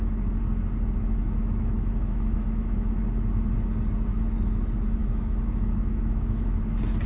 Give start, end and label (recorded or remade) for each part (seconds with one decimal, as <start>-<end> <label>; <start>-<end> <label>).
0.0-1.4 recorded; 1.4-3.0 remade; 3.0-4.1 recorded; 4.1-4.6 remade; 4.6-5.0 recorded; 5.0-6.6 remade; 6.6-7.1 recorded